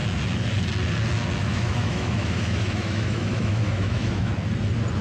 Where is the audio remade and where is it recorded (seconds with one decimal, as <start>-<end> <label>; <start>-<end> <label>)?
0.0-1.4 recorded; 1.4-4.3 remade; 4.3-5.0 recorded

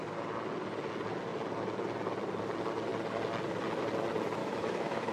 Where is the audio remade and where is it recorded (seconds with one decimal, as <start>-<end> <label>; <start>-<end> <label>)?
0.0-4.4 recorded; 4.4-5.1 remade

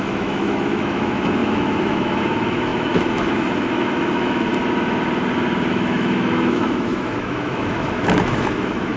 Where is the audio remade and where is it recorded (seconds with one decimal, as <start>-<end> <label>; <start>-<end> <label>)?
0.0-4.5 remade; 4.5-5.7 recorded; 5.7-9.0 remade

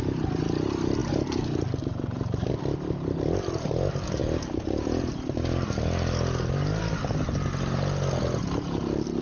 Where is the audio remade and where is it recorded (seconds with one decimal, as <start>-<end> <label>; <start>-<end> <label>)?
0.0-9.2 recorded

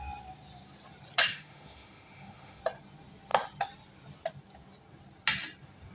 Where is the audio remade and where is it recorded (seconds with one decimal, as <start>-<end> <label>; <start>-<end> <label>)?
0.0-1.2 recorded; 1.2-2.6 remade; 2.6-5.9 recorded

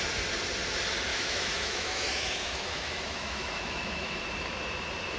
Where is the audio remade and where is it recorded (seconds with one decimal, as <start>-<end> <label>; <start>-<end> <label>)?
0.0-1.1 recorded; 1.1-4.2 remade; 4.2-5.2 recorded

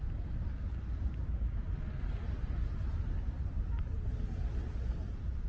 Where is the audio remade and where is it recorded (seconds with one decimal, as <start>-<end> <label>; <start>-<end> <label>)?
0.0-5.5 recorded

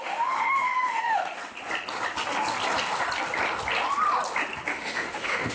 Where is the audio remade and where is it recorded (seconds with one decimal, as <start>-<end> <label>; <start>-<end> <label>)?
0.0-1.4 remade; 1.4-4.7 recorded; 4.7-5.5 remade